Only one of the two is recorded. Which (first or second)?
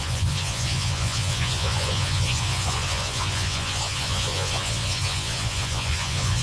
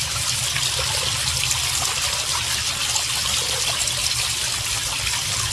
second